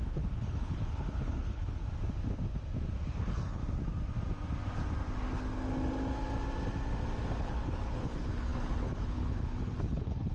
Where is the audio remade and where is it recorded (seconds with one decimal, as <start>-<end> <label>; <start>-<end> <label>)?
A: 0.0-1.8 remade; 1.8-3.0 recorded; 3.0-3.6 remade; 3.6-7.4 recorded; 7.4-10.3 remade